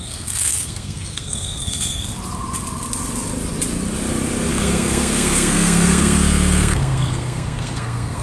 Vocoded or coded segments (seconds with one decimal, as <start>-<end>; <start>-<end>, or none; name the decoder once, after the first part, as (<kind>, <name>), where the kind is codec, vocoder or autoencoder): 0.0-2.1 (codec, SNAC); 4.5-8.2